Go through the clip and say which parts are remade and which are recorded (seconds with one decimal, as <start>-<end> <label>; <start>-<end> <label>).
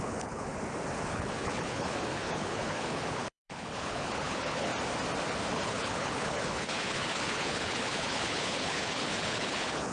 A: 0.0-0.5 remade; 0.5-1.1 recorded; 1.1-4.7 remade; 4.7-5.5 recorded; 5.5-9.9 remade